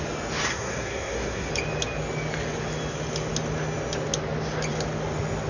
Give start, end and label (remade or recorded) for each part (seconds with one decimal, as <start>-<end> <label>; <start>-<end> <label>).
0.0-0.5 recorded; 0.5-1.5 remade; 1.5-5.5 recorded